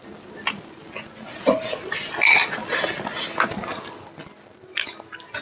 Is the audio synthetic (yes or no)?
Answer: no